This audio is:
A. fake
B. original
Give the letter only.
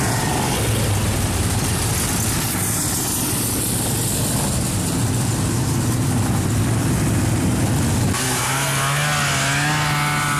B